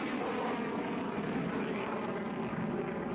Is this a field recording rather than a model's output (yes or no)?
yes